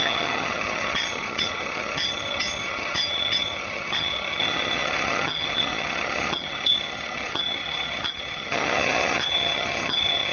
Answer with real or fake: fake